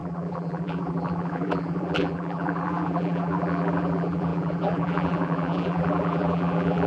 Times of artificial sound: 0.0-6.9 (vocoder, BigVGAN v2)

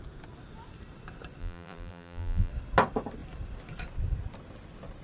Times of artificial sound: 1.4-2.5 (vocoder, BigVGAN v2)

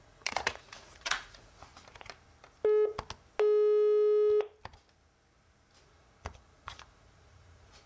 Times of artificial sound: 0.0-1.7 (vocoder, Vocos); 5.8-7.9

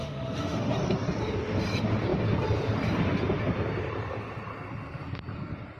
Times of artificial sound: 0.0-0.7 (autoencoder, DAC-VAE)